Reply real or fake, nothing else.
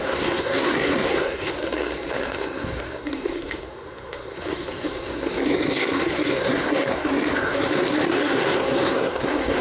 fake